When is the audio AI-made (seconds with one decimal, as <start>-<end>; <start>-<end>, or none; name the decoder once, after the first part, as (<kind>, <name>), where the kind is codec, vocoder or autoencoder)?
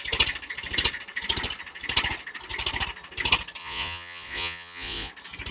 3.6-5.1 (vocoder, Vocos)